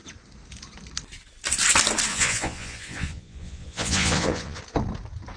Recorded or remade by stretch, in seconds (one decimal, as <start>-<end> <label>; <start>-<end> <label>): 0.0-2.1 recorded; 2.1-4.6 remade; 4.6-5.4 recorded